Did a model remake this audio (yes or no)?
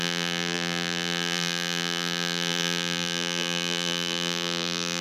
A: yes